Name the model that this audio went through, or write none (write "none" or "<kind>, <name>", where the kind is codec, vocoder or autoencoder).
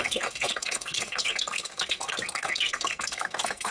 codec, SNAC